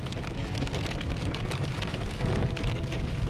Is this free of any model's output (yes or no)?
no